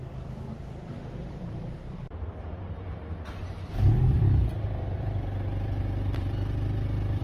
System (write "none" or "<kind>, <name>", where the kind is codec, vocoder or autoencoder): vocoder, BigVGAN v2